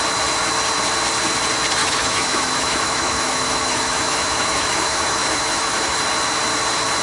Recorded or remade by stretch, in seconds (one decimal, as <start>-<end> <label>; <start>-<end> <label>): 0.0-1.8 recorded; 1.8-6.0 remade; 6.0-7.0 recorded